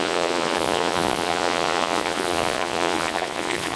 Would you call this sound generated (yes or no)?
yes